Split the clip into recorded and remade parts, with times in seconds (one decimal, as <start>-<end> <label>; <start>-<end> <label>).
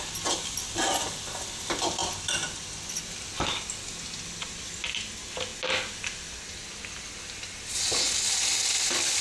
0.0-9.2 recorded